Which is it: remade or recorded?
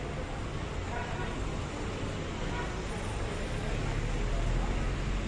recorded